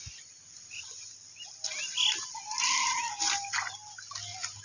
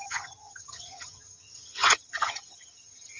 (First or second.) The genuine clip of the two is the first